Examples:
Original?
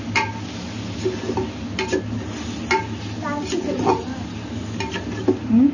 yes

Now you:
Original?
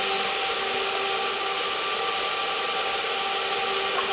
yes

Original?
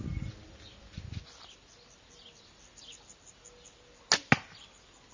yes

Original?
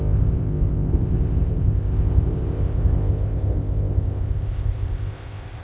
no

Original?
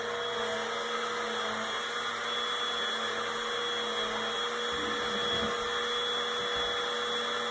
yes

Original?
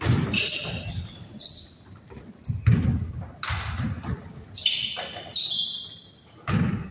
yes